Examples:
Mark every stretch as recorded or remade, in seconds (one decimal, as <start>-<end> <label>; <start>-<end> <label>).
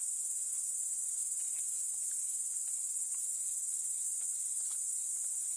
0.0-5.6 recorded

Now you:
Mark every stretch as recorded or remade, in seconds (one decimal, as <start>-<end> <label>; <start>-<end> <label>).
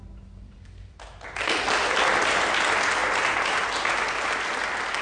0.0-5.0 recorded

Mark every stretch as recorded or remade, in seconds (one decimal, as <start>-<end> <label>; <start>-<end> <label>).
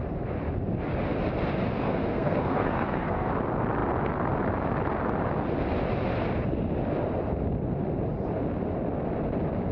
0.0-1.7 recorded; 1.7-3.3 remade; 3.3-9.7 recorded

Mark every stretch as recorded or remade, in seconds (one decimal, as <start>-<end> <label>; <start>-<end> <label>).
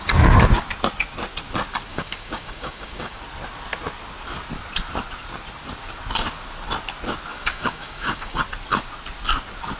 0.0-1.9 recorded; 1.9-3.2 remade; 3.2-7.3 recorded; 7.3-8.4 remade; 8.4-9.8 recorded